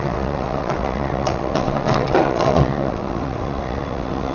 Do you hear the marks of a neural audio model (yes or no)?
yes